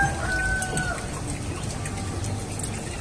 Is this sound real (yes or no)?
yes